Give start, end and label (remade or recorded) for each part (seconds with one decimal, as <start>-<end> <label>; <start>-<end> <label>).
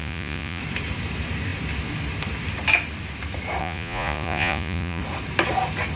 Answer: 0.0-0.6 remade; 0.6-3.6 recorded; 3.6-5.0 remade; 5.0-6.0 recorded